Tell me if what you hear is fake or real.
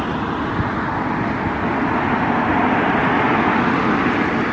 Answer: real